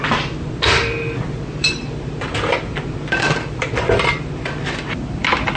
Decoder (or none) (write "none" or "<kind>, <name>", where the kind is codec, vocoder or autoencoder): none